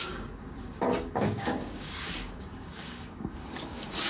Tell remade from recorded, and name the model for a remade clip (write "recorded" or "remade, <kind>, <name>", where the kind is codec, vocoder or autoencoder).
remade, codec, DAC